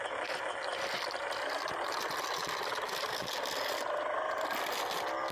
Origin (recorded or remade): recorded